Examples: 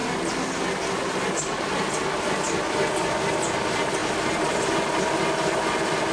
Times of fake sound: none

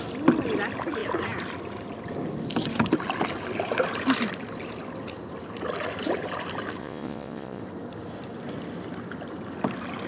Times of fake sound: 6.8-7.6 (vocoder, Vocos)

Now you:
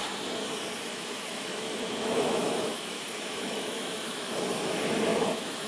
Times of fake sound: 0.9-4.3 (autoencoder, DAC-VAE); 5.1-5.7